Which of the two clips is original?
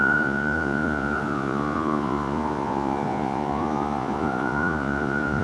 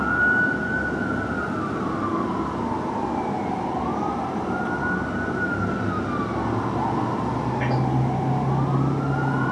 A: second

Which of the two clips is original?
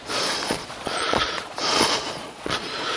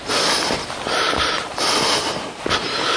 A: second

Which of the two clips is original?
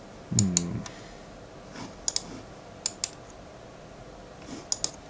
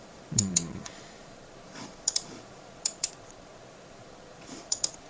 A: first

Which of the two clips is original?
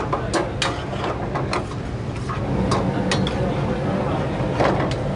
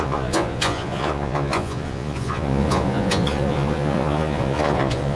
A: first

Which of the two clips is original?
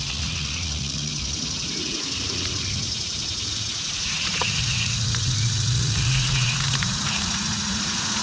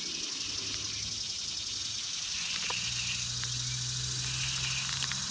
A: second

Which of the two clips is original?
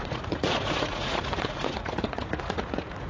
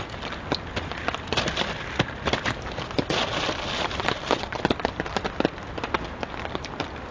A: second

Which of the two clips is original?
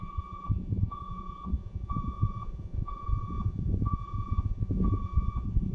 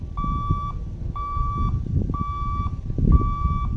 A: second